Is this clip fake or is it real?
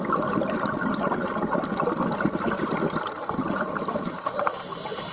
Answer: real